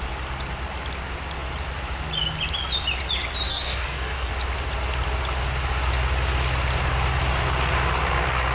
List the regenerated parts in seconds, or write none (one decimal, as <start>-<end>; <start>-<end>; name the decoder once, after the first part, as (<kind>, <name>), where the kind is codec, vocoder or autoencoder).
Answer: 3.5-4.3 (codec, DAC)